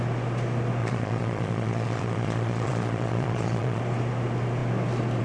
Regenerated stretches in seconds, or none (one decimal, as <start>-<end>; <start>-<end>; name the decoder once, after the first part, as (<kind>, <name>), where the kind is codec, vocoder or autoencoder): 0.8-3.8 (vocoder, Vocos)